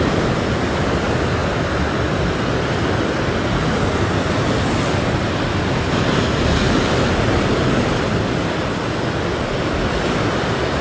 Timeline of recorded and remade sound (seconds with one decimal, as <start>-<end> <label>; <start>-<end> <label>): 0.0-10.8 recorded